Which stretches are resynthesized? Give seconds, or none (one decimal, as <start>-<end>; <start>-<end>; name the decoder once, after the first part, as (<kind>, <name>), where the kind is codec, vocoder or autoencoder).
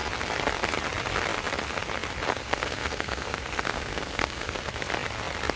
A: 2.3-4.8 (codec, SNAC)